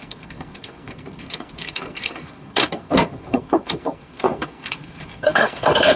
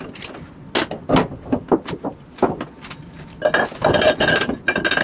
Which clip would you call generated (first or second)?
first